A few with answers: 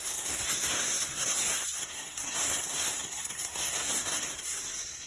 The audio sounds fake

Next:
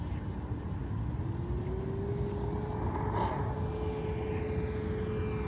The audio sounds real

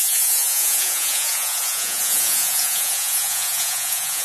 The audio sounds fake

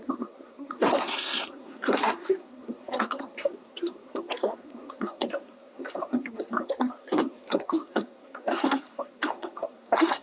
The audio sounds fake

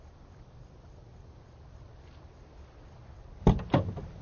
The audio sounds real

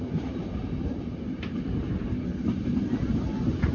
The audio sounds fake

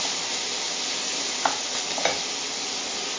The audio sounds real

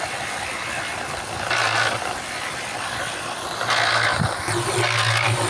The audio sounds real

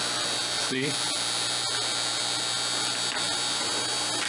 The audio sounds real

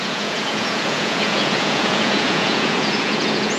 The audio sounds fake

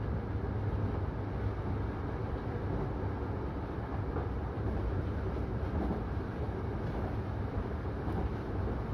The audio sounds real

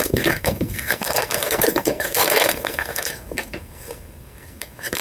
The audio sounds fake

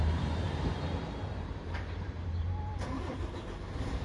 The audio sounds fake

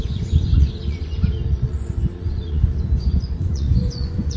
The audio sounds fake